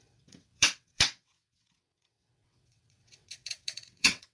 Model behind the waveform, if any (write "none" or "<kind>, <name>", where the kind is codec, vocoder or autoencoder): vocoder, WaveNeXt